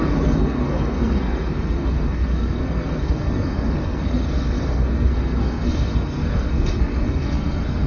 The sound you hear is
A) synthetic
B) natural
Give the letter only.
A